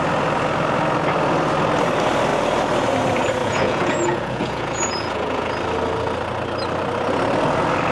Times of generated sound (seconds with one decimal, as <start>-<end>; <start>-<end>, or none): 3.4-5.5